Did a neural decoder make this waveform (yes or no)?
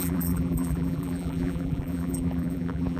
yes